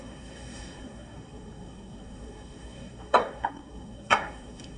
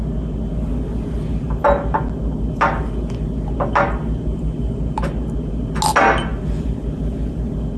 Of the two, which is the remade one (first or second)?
first